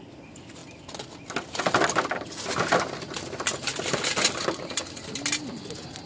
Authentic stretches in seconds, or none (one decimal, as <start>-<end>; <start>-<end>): 0.0-6.1